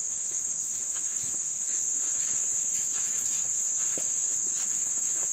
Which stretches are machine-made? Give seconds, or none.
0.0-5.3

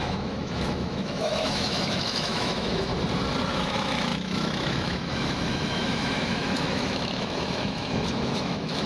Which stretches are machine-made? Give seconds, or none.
0.0-2.9; 3.5-8.9

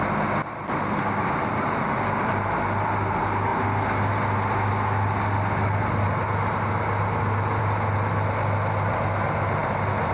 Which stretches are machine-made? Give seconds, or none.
none

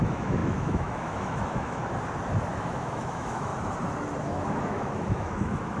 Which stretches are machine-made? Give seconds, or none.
0.0-1.8; 2.5-3.5; 4.2-5.8